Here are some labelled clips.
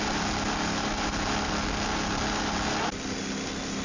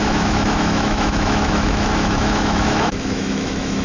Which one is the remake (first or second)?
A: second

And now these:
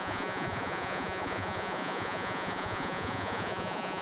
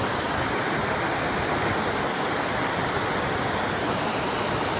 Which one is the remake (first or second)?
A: first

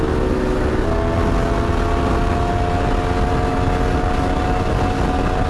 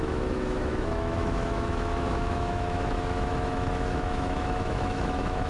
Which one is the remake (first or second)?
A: second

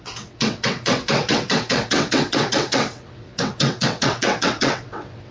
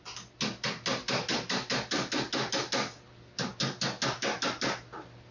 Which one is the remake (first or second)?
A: first